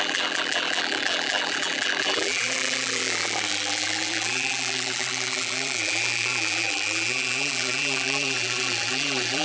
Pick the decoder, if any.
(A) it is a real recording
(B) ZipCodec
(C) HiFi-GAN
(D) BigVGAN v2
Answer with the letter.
D